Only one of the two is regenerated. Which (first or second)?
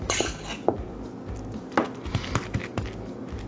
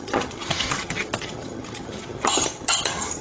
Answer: second